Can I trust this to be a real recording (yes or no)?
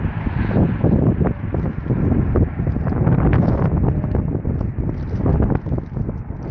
yes